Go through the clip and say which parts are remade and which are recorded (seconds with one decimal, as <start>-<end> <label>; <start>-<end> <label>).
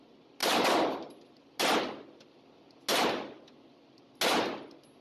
0.0-5.0 recorded